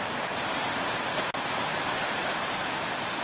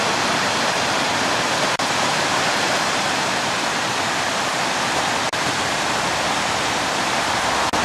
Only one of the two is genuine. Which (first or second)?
first